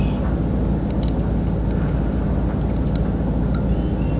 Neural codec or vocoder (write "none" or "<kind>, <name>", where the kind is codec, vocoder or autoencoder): none